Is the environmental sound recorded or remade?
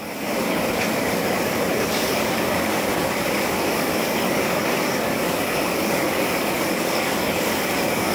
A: remade